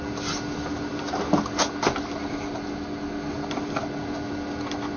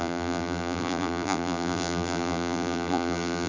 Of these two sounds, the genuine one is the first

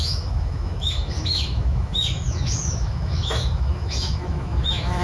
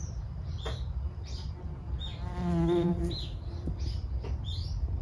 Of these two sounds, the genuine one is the second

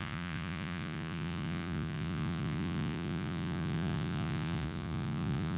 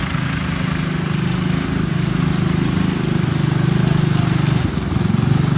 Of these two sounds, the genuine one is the second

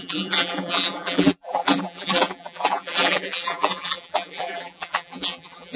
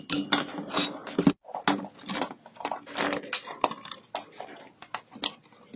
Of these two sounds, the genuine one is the second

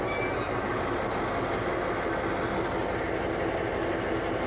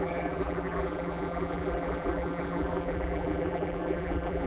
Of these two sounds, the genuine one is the first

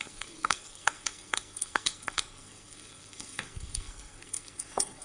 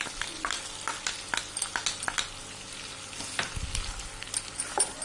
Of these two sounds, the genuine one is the second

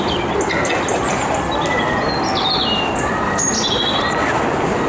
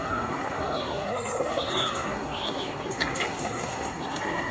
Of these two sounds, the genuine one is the first